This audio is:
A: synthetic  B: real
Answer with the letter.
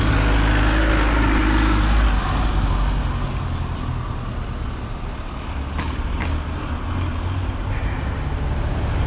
B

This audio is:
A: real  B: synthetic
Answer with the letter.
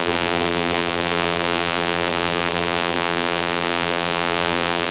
B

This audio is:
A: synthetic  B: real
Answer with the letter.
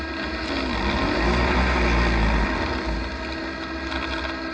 B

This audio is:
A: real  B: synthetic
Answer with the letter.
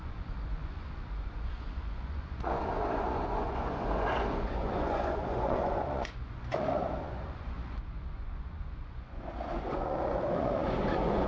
B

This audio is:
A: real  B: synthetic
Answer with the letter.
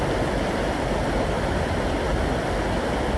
A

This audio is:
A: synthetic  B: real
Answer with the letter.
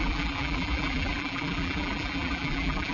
A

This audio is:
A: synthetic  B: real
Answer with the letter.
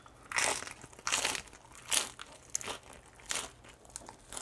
B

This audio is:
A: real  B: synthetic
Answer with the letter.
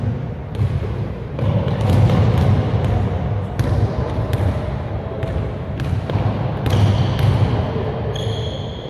A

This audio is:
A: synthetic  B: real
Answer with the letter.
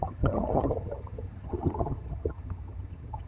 A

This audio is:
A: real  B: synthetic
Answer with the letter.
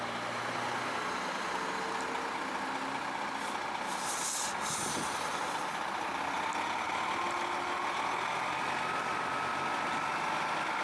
A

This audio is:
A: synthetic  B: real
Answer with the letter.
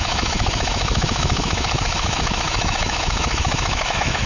A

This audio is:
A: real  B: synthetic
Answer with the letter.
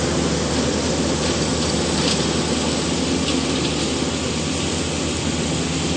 A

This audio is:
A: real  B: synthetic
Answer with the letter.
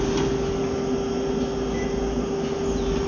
A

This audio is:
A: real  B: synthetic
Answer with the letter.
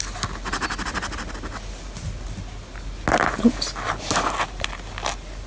A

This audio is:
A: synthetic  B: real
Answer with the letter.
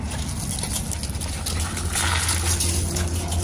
B